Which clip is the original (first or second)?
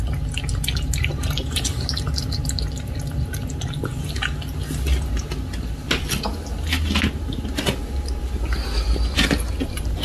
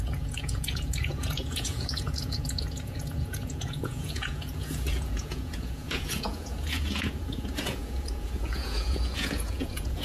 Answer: first